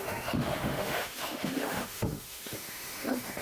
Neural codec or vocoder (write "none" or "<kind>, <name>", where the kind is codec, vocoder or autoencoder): autoencoder, DAC-VAE